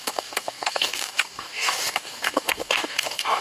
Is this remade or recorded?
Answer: remade